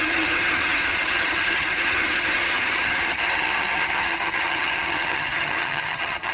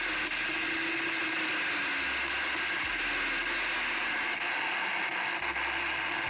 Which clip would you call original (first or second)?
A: second